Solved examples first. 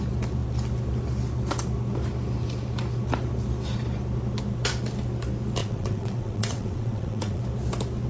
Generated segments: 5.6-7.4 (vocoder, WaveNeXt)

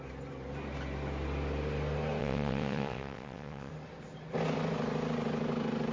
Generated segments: 2.2-3.7 (vocoder, WaveNeXt)

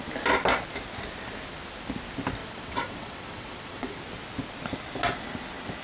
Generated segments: 2.4-4.0 (vocoder, WaveNeXt)

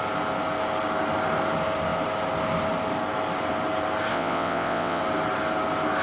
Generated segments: 4.1-5.0 (vocoder, WaveNeXt)

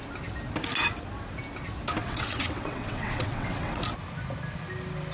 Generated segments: 2.0-3.8 (vocoder, WaveNeXt)